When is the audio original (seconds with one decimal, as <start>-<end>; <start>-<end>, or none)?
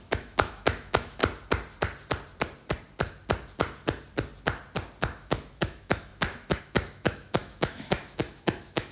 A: 1.2-5.0